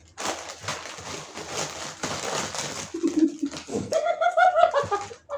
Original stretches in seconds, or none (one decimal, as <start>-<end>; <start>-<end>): 0.0-3.7; 4.7-5.4